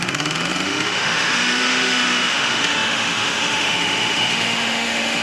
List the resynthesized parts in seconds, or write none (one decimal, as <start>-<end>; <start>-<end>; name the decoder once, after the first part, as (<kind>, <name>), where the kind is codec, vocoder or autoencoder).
0.0-5.2 (autoencoder, DAC-VAE)

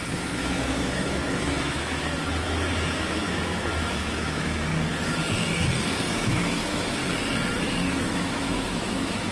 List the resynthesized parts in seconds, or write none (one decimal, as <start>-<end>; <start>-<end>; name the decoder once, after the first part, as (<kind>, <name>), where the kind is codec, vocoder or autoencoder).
0.0-4.7 (autoencoder, DAC-VAE); 6.1-7.0; 7.5-9.3